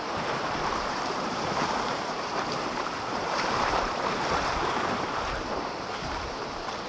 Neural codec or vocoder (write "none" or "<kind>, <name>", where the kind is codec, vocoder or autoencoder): vocoder, BigVGAN v2